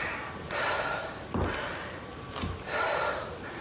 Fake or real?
real